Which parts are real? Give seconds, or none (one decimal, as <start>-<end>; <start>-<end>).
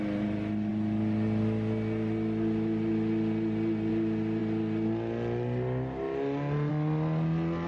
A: 0.0-7.7